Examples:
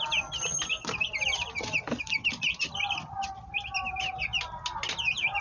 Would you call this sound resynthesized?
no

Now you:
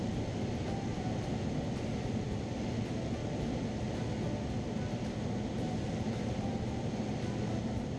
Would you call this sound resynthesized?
no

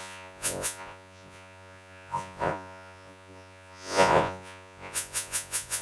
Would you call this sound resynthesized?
yes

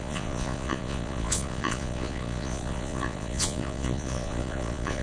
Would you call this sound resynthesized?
yes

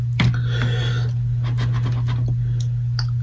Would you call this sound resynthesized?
no